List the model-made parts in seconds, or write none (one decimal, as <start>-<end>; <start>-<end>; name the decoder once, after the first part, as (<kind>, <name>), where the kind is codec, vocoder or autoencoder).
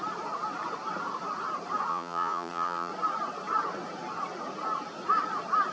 1.9-2.9 (vocoder, Vocos)